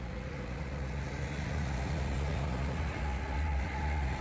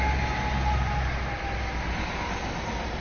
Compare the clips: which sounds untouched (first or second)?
second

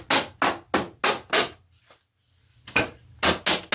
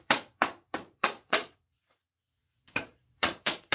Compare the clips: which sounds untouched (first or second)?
first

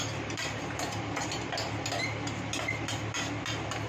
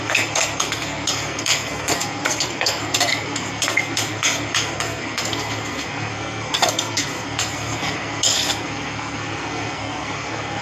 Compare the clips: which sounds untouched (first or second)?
first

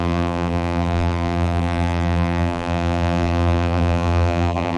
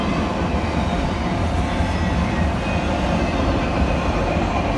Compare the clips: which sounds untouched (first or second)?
second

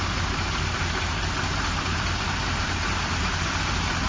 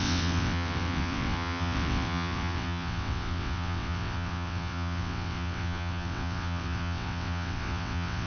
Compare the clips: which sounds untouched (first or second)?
first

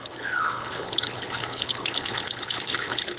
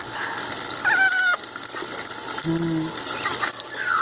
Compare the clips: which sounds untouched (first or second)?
second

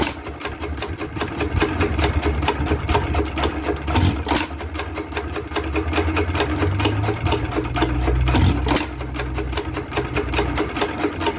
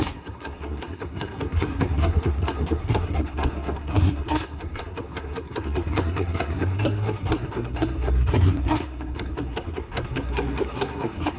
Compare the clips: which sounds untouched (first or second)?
first